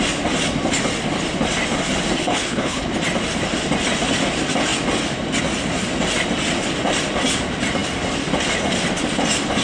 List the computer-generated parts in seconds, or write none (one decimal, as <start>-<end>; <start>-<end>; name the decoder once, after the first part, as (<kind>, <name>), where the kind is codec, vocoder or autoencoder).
2.2-2.9 (codec, HILCodec)